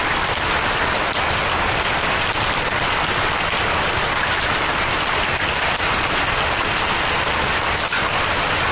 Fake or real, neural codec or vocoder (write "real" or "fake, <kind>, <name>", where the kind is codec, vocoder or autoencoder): real